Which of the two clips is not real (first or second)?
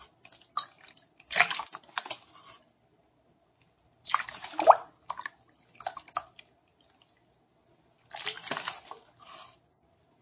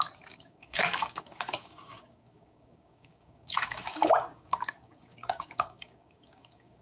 second